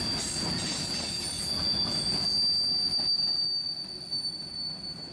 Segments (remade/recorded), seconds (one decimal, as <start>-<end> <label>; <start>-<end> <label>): 0.0-5.1 recorded